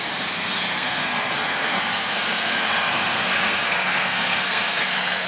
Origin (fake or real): fake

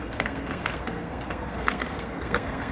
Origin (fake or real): fake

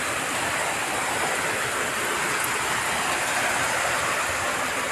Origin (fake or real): real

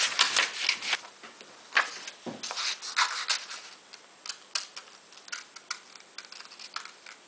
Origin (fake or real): real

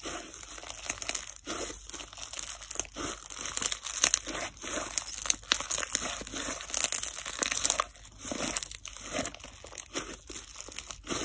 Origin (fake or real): real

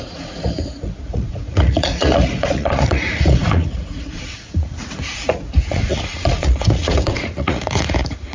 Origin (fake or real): fake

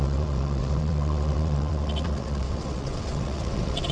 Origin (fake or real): fake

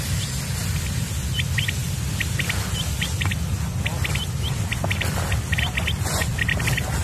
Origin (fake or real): real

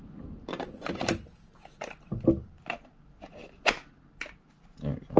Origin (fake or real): real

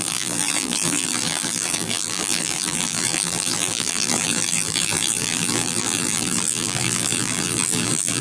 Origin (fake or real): fake